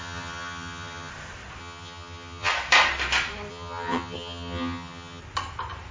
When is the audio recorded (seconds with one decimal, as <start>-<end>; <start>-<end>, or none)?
1.1-1.6; 2.5-3.5; 5.2-5.9